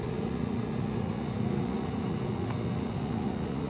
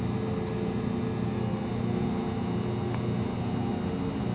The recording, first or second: second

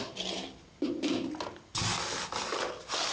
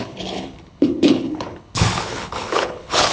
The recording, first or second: first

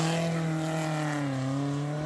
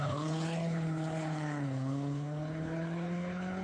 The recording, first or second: first